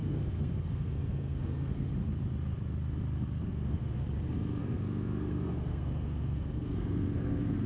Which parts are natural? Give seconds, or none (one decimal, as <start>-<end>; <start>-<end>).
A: 1.9-3.4; 4.0-4.6